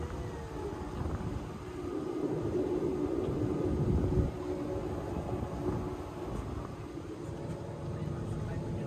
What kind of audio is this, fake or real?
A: real